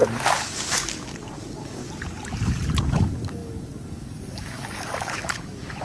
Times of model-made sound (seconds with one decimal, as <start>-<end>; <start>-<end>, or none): 0.0-1.8; 2.8-5.8